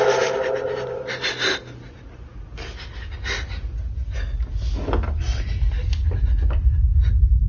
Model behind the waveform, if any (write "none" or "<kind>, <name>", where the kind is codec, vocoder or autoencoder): none